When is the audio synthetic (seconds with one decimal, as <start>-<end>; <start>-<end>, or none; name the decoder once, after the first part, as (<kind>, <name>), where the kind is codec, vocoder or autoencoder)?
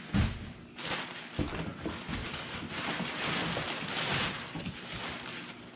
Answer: none